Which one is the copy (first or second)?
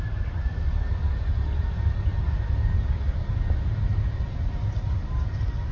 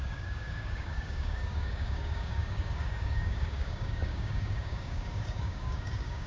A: second